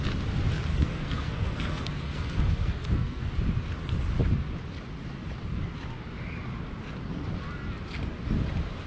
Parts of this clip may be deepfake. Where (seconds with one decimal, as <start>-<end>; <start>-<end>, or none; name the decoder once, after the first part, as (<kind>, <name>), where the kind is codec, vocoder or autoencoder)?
0.7-3.3 (codec, SNAC)